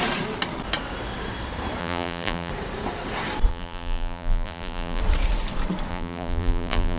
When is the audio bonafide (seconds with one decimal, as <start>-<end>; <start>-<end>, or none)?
0.0-1.8; 2.5-3.5; 5.0-5.9